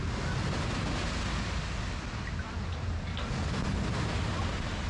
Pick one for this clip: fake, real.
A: real